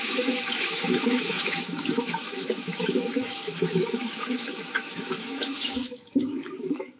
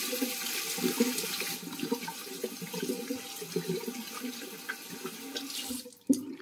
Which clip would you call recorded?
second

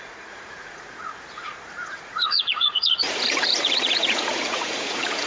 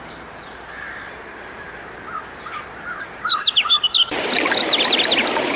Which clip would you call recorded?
second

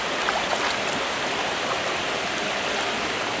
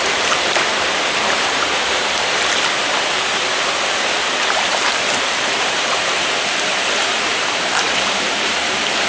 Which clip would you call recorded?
first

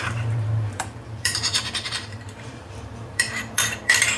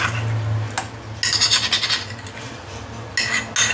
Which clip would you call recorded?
second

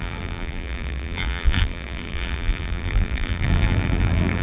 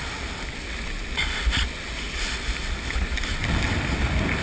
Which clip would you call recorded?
second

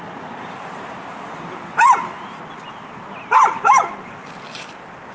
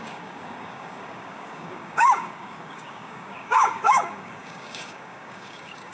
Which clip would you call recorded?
first